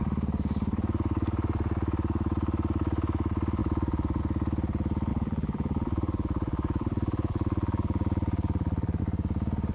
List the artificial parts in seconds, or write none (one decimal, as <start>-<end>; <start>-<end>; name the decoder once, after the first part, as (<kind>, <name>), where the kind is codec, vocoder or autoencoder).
3.6-4.2 (vocoder, BigVGAN v2); 5.1-9.0

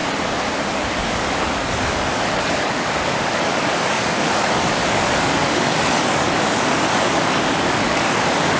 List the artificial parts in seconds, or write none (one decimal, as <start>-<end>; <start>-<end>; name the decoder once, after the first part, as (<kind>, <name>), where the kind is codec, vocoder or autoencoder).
0.7-8.6 (codec, DAC)

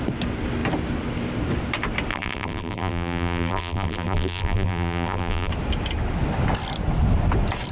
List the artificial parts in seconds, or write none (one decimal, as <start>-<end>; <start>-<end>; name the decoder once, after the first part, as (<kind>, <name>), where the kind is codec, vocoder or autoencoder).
2.1-5.5 (vocoder, BigVGAN v2)

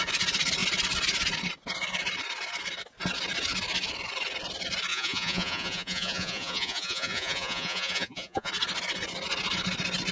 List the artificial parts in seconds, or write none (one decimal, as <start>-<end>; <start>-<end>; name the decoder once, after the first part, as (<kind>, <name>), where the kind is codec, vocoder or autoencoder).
4.9-8.5 (vocoder, Vocos)

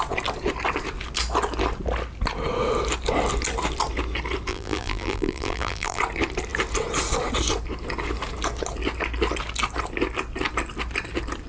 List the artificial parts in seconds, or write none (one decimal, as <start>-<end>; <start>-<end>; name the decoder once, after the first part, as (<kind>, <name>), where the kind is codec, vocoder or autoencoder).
4.5-6.0 (vocoder, BigVGAN v2)

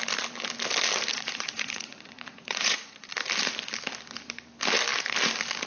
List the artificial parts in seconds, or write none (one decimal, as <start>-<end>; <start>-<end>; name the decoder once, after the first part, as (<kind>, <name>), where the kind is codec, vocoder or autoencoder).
1.1-3.1 (vocoder, Vocos)

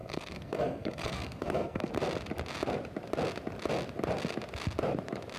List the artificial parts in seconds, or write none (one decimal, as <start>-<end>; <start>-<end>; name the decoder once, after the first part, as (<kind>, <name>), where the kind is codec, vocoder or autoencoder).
0.0-1.9 (codec, SNAC)